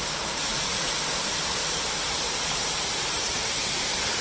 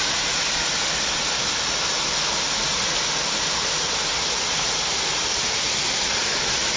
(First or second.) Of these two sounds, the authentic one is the second